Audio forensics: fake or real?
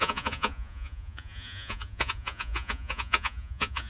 fake